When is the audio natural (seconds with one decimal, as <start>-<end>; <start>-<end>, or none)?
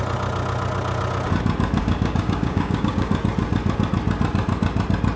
0.0-1.8; 3.1-5.2